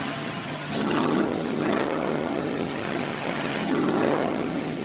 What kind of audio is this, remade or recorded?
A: remade